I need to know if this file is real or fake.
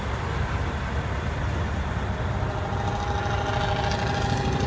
real